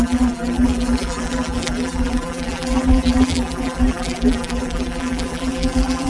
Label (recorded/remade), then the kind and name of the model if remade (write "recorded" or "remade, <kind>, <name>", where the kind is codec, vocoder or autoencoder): remade, vocoder, BigVGAN v2